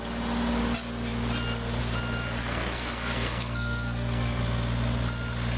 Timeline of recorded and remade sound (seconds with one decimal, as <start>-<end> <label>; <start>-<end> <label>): 0.0-2.4 recorded; 2.4-4.4 remade; 4.4-5.6 recorded